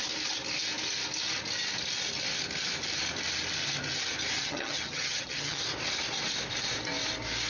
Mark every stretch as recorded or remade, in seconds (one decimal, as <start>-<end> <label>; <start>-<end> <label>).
0.0-4.4 recorded; 4.4-5.6 remade; 5.6-7.5 recorded